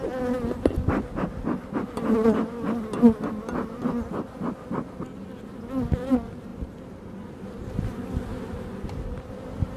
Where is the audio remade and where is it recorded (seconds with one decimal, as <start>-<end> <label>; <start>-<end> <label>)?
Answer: 0.0-6.5 recorded; 6.5-8.4 remade; 8.4-9.8 recorded